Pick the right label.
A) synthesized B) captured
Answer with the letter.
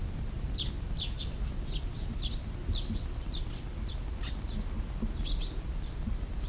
B